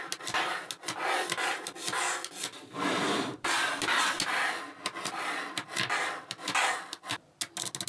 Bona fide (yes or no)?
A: yes